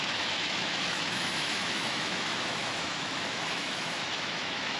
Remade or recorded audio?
remade